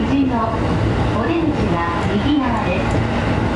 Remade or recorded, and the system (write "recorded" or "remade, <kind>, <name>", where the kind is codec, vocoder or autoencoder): recorded